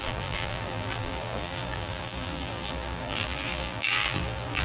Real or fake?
fake